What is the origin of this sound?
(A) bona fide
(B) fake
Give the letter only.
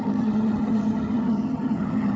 B